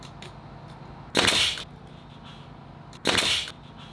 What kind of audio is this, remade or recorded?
recorded